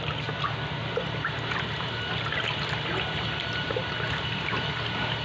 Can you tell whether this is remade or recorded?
recorded